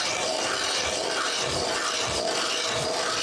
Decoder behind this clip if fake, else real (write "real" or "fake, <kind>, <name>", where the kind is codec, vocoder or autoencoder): real